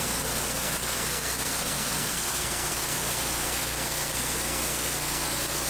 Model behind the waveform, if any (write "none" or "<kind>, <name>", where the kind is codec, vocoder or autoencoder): codec, SNAC